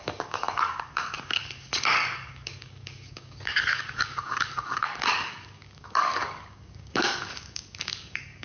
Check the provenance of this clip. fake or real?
fake